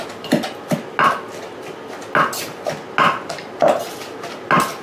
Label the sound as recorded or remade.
recorded